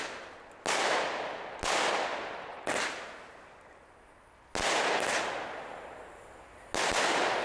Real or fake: real